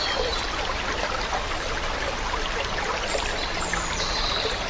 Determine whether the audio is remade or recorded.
recorded